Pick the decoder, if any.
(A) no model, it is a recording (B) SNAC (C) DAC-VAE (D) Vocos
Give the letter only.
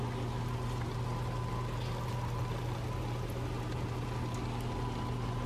A